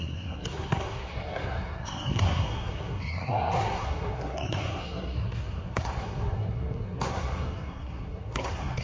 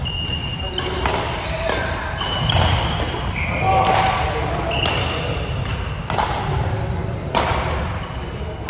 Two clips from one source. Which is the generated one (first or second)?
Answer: first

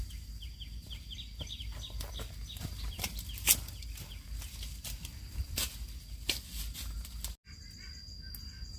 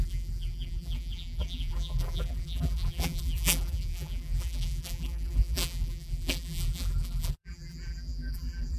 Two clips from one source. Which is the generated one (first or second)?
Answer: second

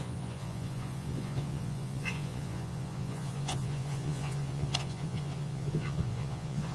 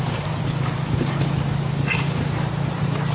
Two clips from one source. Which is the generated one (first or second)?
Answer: first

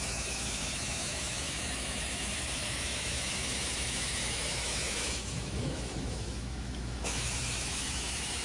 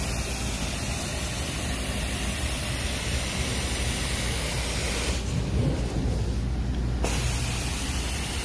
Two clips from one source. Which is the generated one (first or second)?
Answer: first